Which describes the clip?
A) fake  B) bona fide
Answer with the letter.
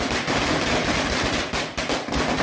B